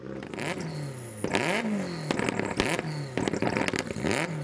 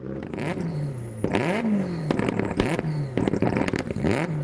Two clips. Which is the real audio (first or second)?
first